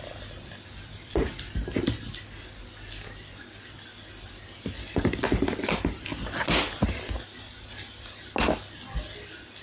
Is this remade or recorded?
recorded